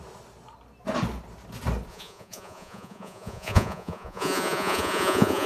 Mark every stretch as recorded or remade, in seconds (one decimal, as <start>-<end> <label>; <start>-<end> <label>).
0.0-1.9 recorded; 1.9-5.5 remade